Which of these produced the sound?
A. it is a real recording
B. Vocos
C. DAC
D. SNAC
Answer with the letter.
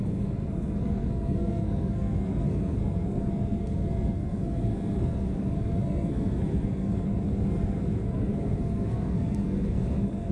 D